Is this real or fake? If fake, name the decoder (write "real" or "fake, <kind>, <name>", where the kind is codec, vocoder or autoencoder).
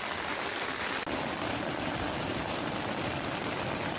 real